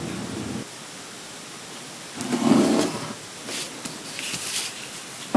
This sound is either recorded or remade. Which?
recorded